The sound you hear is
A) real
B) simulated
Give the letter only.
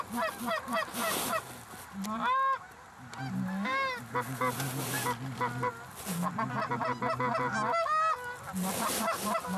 A